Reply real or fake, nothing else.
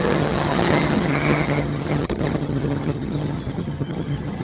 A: fake